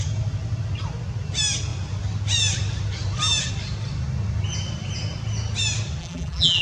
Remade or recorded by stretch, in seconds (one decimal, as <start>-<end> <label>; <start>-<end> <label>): 0.0-6.0 recorded; 6.0-6.6 remade